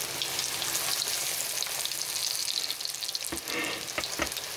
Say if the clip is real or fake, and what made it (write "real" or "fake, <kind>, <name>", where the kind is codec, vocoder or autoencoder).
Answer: real